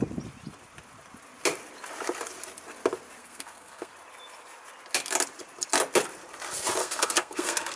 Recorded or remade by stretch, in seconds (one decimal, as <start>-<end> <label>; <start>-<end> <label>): 0.0-3.2 recorded; 3.2-3.9 remade; 3.9-6.8 recorded; 6.8-7.8 remade